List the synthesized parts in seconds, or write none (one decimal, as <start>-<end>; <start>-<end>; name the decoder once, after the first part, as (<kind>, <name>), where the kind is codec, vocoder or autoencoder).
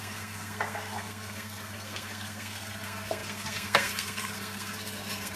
0.0-5.4 (codec, SNAC)